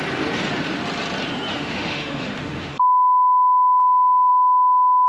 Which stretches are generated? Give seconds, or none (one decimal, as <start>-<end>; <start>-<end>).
1.5-4.3